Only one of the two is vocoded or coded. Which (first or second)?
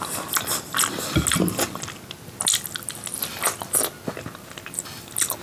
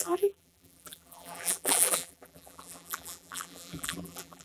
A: second